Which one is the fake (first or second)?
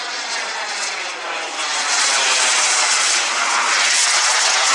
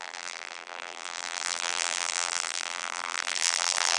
second